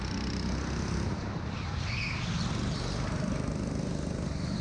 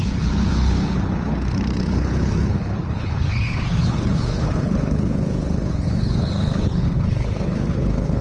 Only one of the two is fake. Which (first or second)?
second